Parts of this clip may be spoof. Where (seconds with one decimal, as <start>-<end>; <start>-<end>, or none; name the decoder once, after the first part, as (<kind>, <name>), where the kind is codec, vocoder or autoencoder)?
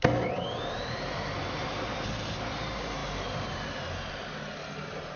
0.0-4.6 (vocoder, BigVGAN v2)